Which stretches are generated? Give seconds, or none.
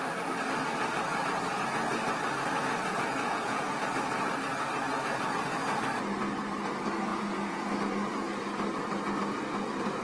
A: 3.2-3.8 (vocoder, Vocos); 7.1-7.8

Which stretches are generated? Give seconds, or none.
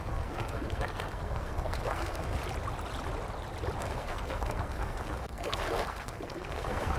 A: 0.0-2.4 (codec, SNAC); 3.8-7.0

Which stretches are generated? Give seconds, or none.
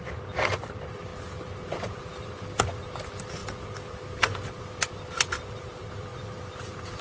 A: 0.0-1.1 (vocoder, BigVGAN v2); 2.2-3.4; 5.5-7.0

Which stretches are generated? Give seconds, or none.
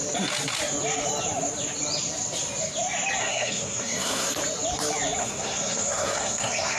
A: 3.2-4.3 (codec, SNAC); 5.2-6.8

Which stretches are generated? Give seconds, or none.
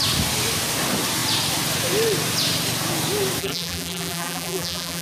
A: 3.4-5.0 (vocoder, BigVGAN v2)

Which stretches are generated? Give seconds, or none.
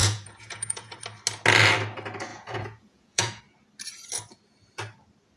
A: 0.0-1.0 (vocoder, Vocos); 2.3-3.4